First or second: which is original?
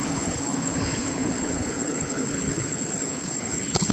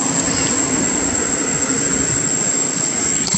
second